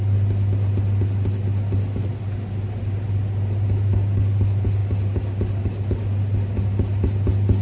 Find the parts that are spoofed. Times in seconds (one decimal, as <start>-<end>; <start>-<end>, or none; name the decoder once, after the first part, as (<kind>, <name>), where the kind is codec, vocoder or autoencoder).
none